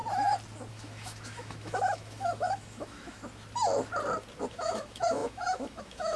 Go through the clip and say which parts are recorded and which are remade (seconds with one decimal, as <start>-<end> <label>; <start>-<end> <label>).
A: 0.0-0.7 recorded; 0.7-3.2 remade; 3.2-4.5 recorded; 4.5-6.2 remade